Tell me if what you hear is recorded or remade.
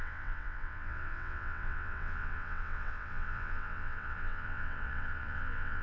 remade